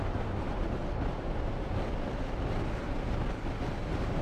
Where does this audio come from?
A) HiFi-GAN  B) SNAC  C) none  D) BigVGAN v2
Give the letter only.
C